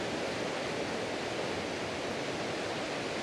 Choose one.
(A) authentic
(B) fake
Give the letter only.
A